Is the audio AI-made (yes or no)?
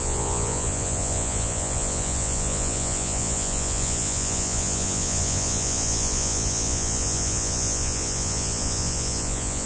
yes